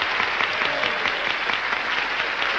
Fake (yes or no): no